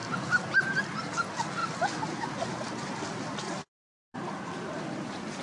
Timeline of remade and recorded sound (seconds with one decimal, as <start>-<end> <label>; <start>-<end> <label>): 0.0-0.8 remade; 0.8-1.6 recorded; 1.6-4.8 remade; 4.8-5.4 recorded